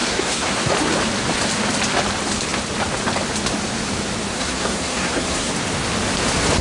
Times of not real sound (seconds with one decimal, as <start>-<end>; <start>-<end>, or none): 0.0-0.7; 4.3-5.5